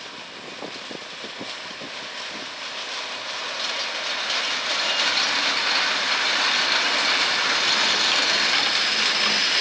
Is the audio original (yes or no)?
yes